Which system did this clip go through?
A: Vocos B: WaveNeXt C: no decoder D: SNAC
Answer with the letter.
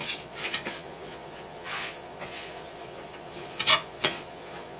A